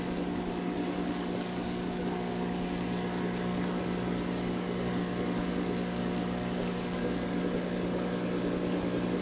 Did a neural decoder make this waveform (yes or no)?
yes